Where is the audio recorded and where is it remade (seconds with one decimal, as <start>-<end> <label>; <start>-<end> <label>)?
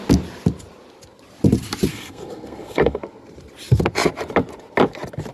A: 0.0-1.9 recorded; 1.9-3.0 remade; 3.0-5.3 recorded